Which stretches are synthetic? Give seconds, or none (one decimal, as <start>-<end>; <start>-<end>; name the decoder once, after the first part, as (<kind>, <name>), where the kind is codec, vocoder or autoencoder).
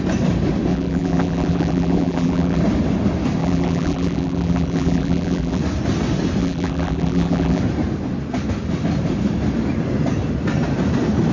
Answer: 0.7-2.6 (vocoder, BigVGAN v2); 3.4-5.6; 6.4-7.6